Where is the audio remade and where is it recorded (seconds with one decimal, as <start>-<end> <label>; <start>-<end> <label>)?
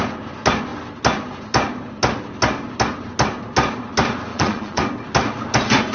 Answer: 0.0-4.3 recorded; 4.3-4.8 remade; 4.8-5.9 recorded